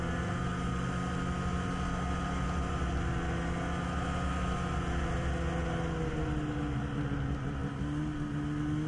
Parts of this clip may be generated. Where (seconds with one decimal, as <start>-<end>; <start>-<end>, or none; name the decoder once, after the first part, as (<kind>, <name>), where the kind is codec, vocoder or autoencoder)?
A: none

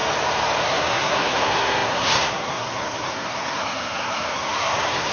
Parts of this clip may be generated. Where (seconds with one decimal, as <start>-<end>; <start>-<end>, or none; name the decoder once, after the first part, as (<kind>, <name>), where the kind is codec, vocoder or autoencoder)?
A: 0.6-5.1 (codec, SNAC)

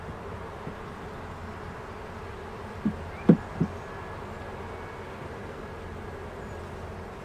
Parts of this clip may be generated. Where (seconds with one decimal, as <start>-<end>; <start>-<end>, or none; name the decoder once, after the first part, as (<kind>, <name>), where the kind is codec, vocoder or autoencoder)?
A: 5.1-5.6 (codec, SNAC)

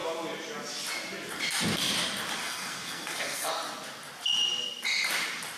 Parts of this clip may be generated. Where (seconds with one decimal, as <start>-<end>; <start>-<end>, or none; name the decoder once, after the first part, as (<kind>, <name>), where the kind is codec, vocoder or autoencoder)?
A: 2.4-3.5 (codec, SNAC)

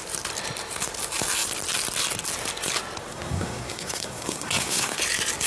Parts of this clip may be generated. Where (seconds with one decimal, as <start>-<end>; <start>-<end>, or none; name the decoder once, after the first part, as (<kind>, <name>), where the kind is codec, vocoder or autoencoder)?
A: 3.1-5.0 (codec, SNAC)